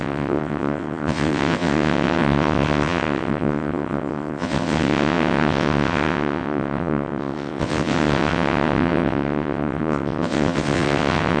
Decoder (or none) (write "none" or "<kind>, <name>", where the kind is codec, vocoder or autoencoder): vocoder, WaveNeXt